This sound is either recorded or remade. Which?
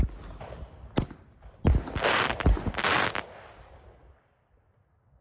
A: recorded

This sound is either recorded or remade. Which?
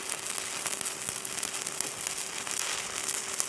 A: recorded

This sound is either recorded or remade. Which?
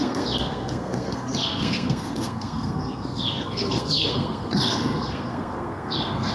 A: remade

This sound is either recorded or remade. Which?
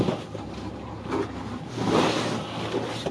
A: recorded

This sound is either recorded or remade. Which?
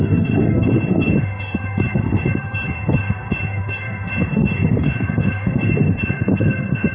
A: remade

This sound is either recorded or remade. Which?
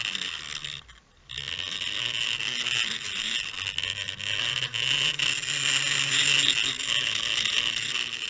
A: recorded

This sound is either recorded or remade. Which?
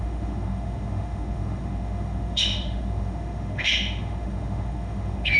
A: remade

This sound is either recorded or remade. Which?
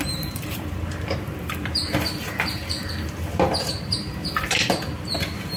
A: remade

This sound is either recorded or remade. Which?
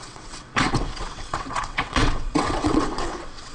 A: remade